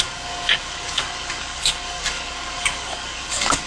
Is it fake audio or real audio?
fake